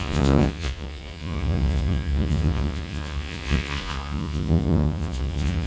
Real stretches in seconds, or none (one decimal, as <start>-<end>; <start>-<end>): none